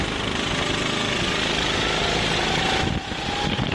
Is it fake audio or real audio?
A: real